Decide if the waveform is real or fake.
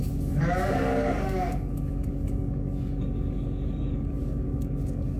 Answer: fake